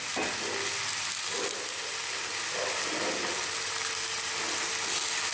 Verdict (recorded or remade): recorded